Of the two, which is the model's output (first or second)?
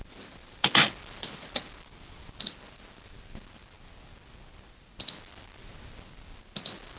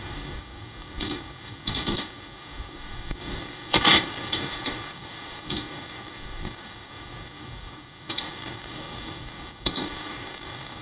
second